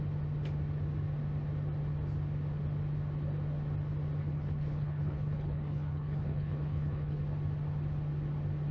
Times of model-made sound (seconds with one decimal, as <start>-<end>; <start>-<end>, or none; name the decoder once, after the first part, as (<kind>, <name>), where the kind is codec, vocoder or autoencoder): 4.2-7.2 (codec, HILCodec)

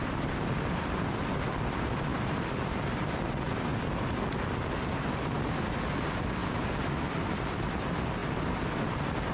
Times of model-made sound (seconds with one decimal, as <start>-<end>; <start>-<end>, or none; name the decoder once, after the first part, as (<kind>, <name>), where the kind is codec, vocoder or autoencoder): 0.0-3.7 (vocoder, BigVGAN v2); 5.5-6.4; 7.1-9.3

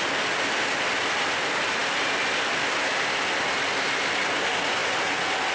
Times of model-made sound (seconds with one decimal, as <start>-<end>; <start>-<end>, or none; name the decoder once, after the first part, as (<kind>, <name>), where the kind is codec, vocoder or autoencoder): none

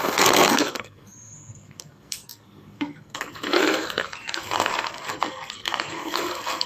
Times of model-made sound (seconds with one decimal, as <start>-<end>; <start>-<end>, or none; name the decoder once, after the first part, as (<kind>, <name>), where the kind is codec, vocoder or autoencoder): 0.0-6.7 (codec, SNAC)

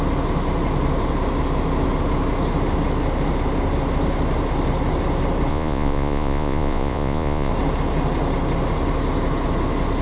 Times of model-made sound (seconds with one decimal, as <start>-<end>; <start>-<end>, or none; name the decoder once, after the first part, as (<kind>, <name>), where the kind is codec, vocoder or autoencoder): 5.5-7.5 (vocoder, Vocos)